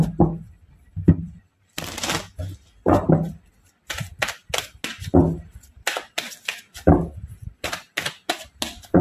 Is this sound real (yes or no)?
yes